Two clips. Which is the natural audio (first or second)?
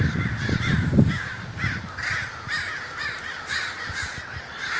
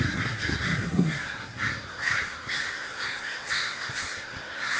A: first